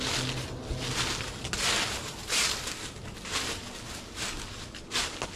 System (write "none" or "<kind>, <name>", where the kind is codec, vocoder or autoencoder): none